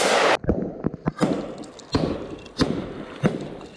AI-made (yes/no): no